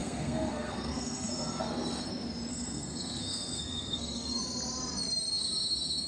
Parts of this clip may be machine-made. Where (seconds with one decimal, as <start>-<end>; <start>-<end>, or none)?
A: 0.0-2.1; 2.5-4.4